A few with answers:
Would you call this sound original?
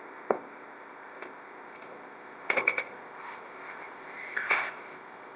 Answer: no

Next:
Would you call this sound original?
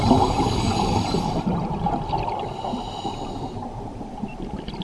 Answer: no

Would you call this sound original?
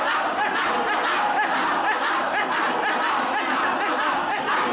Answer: yes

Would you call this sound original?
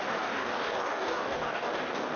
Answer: no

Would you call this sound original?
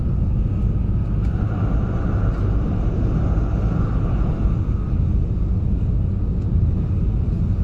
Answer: yes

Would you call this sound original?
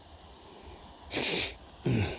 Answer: yes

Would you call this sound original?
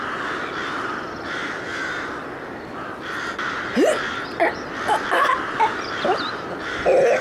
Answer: yes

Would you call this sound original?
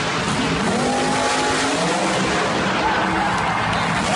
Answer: yes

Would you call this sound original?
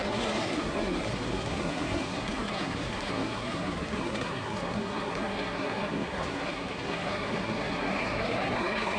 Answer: no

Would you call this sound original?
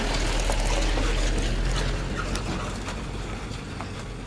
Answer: yes